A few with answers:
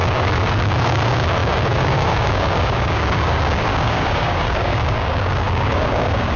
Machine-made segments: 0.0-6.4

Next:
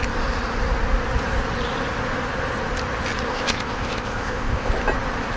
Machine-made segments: 3.3-4.7

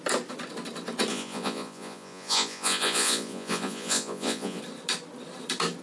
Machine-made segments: 1.1-4.6